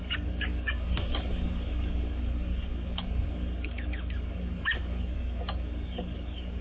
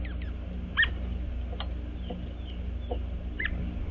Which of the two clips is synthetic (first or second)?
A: first